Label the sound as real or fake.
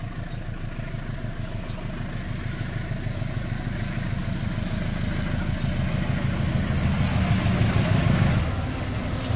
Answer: real